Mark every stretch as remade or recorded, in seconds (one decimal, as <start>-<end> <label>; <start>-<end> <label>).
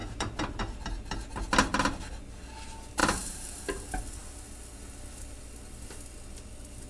0.0-0.6 remade; 0.6-3.0 recorded; 3.0-3.6 remade; 3.6-6.9 recorded